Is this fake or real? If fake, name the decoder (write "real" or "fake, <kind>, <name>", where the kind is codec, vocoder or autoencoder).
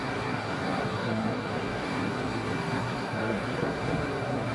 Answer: fake, codec, SNAC